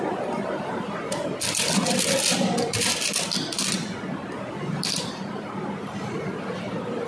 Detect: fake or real real